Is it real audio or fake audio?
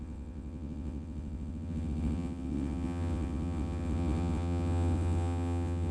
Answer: fake